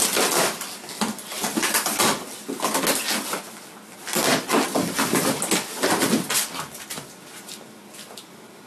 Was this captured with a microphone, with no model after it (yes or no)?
yes